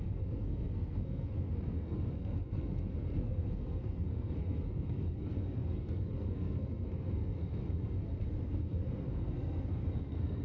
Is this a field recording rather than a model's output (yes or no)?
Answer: no